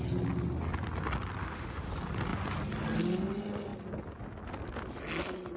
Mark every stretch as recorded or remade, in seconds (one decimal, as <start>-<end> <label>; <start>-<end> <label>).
0.0-1.4 recorded; 1.4-1.9 remade; 1.9-5.6 recorded